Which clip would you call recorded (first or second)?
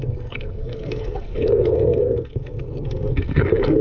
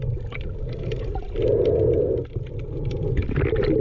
second